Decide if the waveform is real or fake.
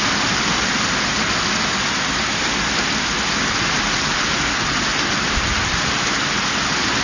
real